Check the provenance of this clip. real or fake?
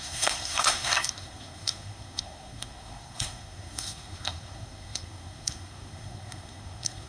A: fake